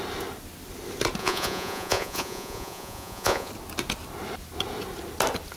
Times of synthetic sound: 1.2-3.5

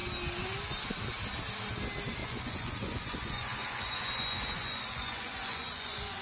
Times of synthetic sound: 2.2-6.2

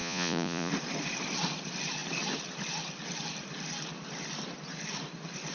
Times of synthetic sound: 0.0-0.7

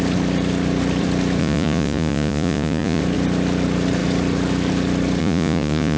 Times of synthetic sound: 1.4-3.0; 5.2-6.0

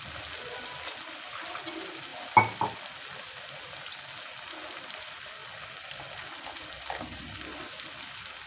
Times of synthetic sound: none

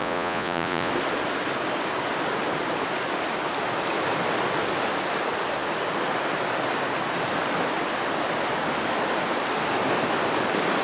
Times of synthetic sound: 0.0-0.9